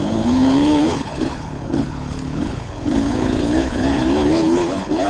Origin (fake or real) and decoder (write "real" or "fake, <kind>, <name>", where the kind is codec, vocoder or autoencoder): fake, codec, HILCodec